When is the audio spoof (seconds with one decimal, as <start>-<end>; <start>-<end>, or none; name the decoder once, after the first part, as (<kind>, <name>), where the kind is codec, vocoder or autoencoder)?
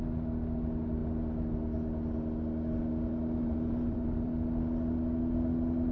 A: 3.4-4.3 (vocoder, BigVGAN v2)